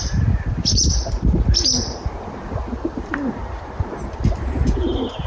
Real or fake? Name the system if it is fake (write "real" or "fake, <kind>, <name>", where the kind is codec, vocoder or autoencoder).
fake, vocoder, BigVGAN v2